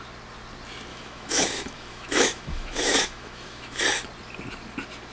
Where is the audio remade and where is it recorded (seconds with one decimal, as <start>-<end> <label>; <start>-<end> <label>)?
0.0-0.9 recorded; 0.9-3.8 remade; 3.8-5.1 recorded